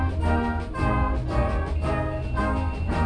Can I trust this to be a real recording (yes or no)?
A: yes